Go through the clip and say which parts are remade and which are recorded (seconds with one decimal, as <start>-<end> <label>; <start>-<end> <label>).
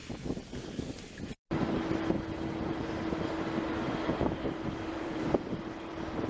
0.0-4.4 recorded; 4.4-6.3 remade